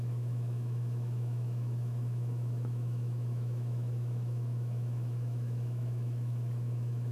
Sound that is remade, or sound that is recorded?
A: remade